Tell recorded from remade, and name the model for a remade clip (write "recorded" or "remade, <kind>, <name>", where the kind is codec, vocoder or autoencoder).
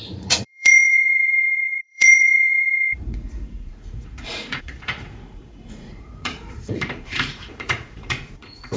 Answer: remade, vocoder, Vocos